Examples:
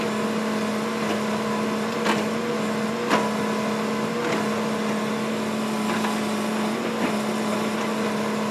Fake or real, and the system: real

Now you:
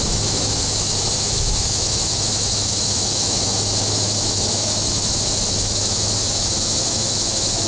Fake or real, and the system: fake, autoencoder, DAC-VAE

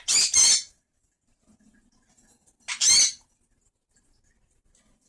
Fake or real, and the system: real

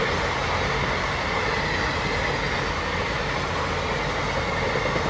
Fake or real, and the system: real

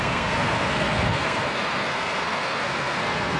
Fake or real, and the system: fake, codec, SNAC